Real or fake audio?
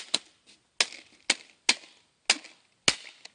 real